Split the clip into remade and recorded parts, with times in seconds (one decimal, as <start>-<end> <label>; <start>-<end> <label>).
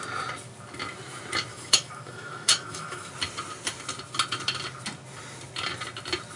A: 0.0-1.5 recorded; 1.5-3.1 remade; 3.1-6.4 recorded